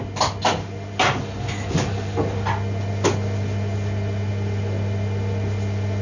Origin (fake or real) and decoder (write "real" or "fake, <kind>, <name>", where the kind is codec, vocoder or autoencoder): real